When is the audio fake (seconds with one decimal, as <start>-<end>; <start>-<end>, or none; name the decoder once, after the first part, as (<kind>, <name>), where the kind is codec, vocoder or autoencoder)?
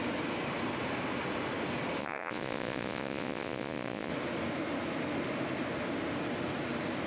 2.0-4.1 (vocoder, Vocos)